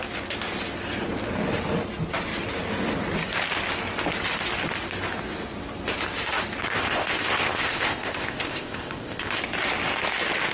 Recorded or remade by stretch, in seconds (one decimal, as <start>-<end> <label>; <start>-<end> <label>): 0.0-6.7 recorded; 6.7-9.4 remade; 9.4-10.5 recorded